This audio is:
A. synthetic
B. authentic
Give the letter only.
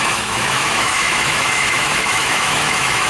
A